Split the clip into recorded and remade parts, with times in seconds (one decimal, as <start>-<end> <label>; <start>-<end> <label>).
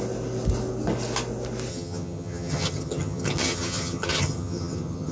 0.0-1.7 recorded; 1.7-5.1 remade